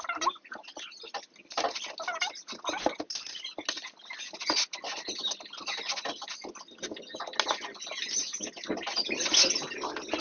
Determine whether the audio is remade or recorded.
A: recorded